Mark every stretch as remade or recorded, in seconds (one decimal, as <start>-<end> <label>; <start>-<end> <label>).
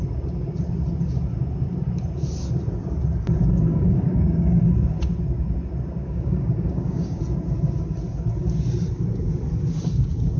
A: 0.0-3.7 recorded; 3.7-4.7 remade; 4.7-6.0 recorded; 6.0-7.2 remade; 7.2-10.4 recorded